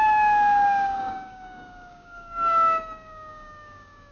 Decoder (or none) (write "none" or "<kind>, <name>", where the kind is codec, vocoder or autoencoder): codec, DAC